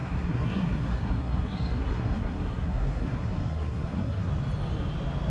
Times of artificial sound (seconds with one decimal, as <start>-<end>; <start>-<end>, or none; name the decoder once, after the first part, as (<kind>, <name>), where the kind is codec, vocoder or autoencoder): 0.0-4.3 (codec, SNAC)